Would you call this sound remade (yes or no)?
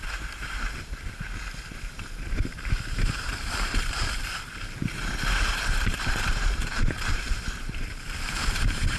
yes